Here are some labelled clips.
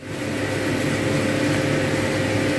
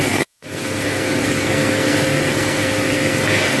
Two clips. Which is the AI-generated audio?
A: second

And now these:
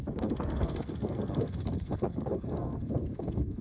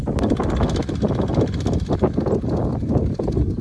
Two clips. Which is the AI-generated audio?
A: first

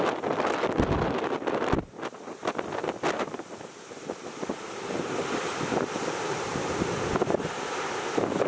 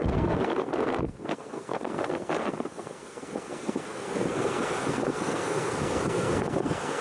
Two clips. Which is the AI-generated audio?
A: second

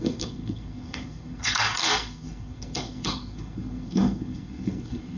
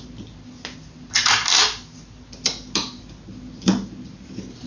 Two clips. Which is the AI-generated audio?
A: first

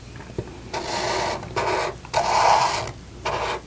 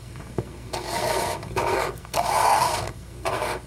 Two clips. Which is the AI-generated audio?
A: second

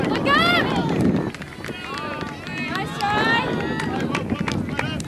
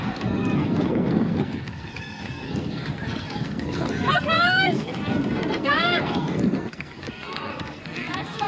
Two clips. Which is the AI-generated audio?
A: second